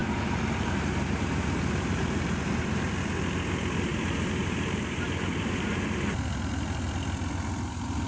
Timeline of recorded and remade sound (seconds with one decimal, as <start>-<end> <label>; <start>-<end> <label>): 0.0-2.8 remade; 2.8-3.9 recorded; 3.9-5.7 remade; 5.7-8.1 recorded